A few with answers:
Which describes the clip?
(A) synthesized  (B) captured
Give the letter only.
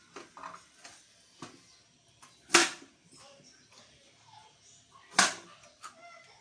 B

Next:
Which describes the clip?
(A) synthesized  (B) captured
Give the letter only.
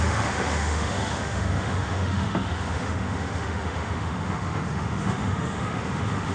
A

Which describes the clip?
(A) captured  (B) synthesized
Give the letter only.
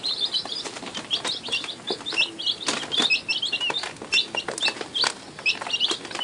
A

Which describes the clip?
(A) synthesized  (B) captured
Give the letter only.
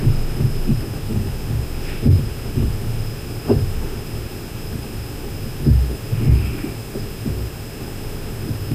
A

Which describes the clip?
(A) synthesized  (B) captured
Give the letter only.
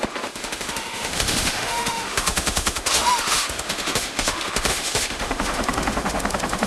A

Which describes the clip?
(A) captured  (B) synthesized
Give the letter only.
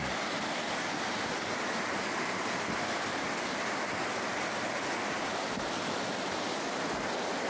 A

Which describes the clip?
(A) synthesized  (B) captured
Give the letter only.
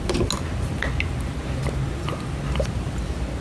B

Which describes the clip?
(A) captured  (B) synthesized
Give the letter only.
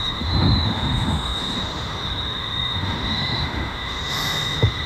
B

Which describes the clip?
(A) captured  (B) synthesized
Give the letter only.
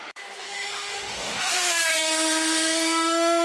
B